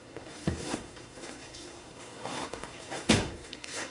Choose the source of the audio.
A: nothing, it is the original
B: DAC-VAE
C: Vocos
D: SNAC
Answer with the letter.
D